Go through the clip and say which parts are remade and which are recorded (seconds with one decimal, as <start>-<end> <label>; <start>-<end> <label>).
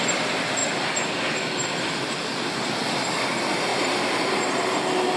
0.0-0.6 recorded; 0.6-1.9 remade; 1.9-3.7 recorded; 3.7-4.3 remade; 4.3-5.2 recorded